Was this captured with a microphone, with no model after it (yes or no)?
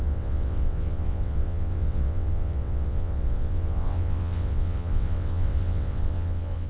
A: no